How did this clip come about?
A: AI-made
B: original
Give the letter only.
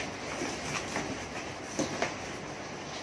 B